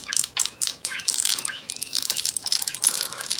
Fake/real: fake